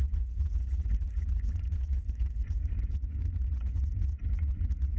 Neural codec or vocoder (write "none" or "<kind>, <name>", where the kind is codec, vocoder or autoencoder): vocoder, Vocos